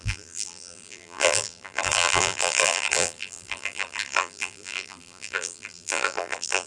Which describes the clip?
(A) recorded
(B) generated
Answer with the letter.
B